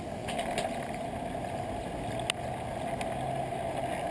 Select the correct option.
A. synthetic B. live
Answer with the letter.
B